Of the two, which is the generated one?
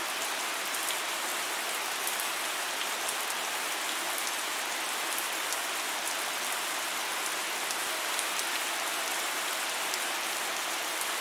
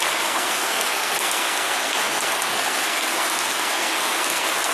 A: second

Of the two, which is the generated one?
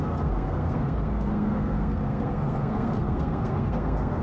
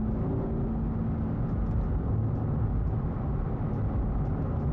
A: first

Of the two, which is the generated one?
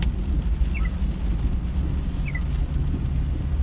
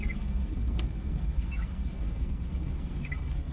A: second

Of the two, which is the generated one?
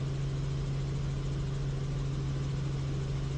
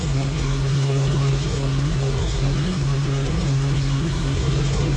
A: second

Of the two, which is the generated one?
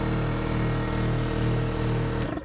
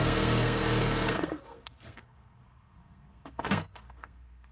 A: second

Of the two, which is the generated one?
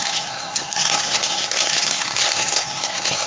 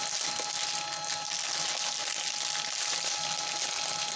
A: first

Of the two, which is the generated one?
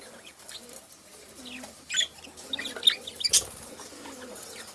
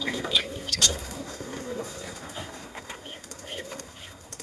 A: second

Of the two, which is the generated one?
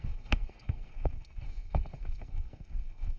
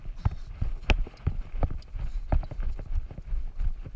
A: first